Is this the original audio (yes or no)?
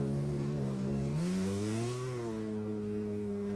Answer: no